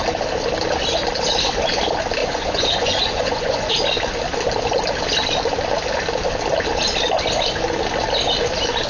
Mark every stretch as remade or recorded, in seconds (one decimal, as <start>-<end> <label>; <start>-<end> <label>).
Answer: 0.0-2.2 recorded; 2.2-3.7 remade; 3.7-8.9 recorded